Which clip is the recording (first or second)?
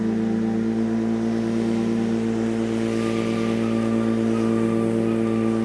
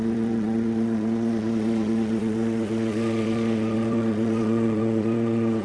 first